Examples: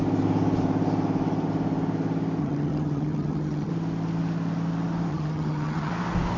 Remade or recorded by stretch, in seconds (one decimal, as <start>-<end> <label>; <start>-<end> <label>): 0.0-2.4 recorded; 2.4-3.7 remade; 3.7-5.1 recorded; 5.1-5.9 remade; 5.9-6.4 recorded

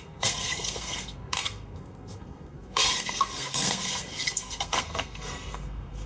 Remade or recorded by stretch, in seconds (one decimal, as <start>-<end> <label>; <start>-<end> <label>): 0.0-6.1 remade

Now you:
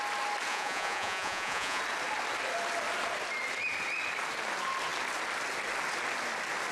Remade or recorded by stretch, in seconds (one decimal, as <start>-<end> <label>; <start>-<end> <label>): 0.0-0.5 recorded; 0.5-1.8 remade; 1.8-6.7 recorded

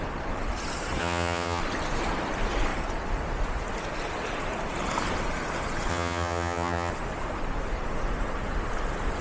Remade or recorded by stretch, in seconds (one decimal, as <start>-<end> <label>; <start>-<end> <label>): 0.0-1.0 recorded; 1.0-1.6 remade; 1.6-5.9 recorded; 5.9-6.9 remade; 6.9-9.2 recorded

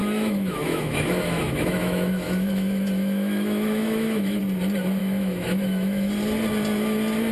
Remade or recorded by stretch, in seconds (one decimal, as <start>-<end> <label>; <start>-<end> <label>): 0.0-4.4 remade; 4.4-5.0 recorded; 5.0-6.1 remade; 6.1-7.3 recorded

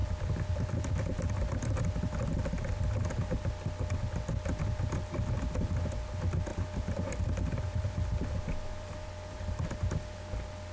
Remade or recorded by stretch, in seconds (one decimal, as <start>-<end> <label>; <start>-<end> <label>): 0.0-3.5 remade; 3.5-6.5 recorded; 6.5-9.8 remade; 9.8-10.7 recorded

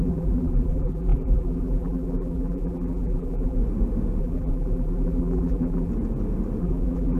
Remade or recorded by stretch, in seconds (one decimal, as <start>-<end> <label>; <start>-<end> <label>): 0.0-3.6 remade; 3.6-4.2 recorded; 4.2-5.9 remade; 5.9-6.6 recorded; 6.6-7.2 remade

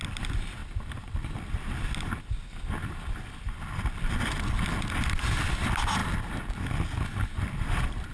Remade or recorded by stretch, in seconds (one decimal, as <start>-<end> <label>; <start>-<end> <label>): 0.0-8.1 recorded